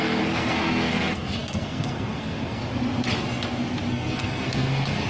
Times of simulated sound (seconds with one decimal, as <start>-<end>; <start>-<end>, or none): 0.0-2.6; 3.9-5.1